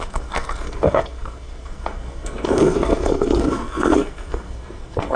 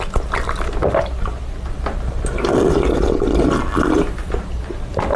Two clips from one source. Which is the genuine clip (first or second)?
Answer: second